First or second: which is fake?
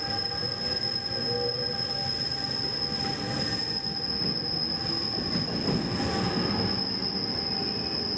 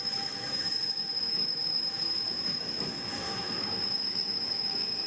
second